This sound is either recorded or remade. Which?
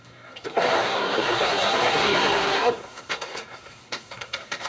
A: remade